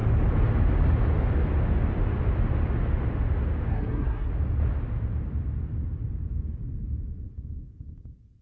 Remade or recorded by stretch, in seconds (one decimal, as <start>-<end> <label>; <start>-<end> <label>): 0.0-3.7 recorded; 3.7-4.3 remade; 4.3-8.4 recorded